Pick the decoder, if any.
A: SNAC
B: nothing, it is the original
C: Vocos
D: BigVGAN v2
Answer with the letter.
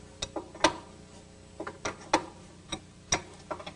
B